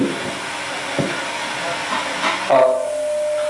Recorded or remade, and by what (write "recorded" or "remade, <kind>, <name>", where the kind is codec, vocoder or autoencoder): recorded